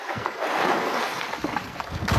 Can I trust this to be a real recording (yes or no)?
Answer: no